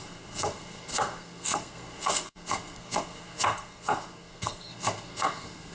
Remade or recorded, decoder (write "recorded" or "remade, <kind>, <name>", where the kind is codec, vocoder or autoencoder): remade, codec, SNAC